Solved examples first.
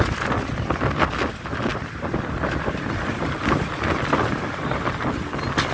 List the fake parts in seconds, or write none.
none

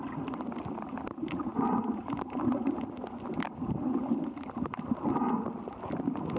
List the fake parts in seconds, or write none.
none

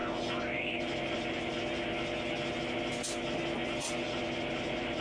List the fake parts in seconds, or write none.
0.6-1.5; 4.5-5.0

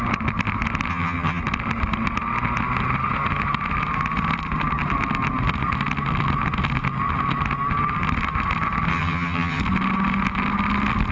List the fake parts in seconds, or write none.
0.9-1.4; 8.9-9.6